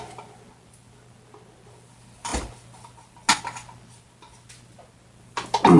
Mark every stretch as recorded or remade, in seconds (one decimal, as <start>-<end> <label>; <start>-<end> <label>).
0.0-5.8 recorded